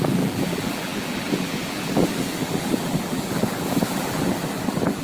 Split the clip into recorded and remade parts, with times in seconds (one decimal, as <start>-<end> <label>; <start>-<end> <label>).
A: 0.0-5.0 remade